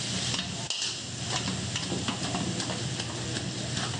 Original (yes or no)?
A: yes